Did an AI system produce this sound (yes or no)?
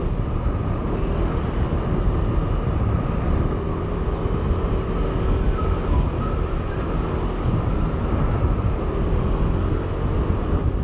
no